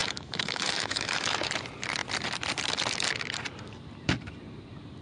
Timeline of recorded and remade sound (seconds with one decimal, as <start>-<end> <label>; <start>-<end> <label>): 0.0-1.5 remade; 1.5-5.0 recorded